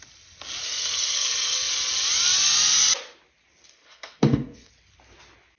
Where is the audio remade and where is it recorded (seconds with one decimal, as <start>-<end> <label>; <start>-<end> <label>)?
0.0-0.6 recorded; 0.6-1.7 remade; 1.7-3.7 recorded; 3.7-4.7 remade; 4.7-5.6 recorded